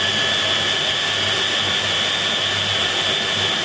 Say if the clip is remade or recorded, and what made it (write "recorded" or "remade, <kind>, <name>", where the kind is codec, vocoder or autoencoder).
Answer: recorded